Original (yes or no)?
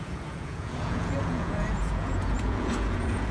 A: no